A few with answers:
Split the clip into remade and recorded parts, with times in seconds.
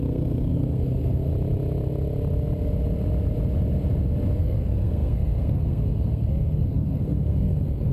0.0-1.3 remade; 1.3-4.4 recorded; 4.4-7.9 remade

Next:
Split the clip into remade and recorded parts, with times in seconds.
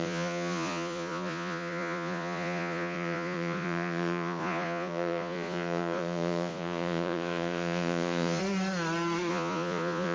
0.0-8.4 remade; 8.4-9.3 recorded; 9.3-10.1 remade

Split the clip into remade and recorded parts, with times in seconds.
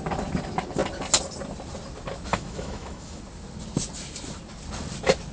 0.0-2.3 recorded; 2.3-3.2 remade; 3.2-5.3 recorded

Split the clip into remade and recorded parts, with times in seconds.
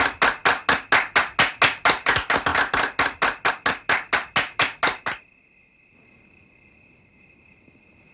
0.0-8.1 recorded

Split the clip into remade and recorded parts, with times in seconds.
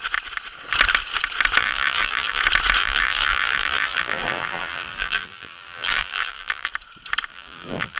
0.0-1.6 recorded; 1.6-2.4 remade; 2.4-2.8 recorded; 2.8-6.7 remade; 6.7-7.3 recorded; 7.3-8.0 remade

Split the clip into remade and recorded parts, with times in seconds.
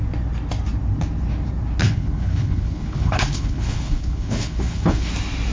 0.0-1.8 recorded; 1.8-5.1 remade; 5.1-5.5 recorded